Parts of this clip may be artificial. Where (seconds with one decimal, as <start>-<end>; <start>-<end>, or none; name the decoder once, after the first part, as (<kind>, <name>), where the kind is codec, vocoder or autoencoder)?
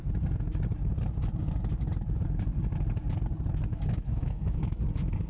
3.7-4.8 (autoencoder, DAC-VAE)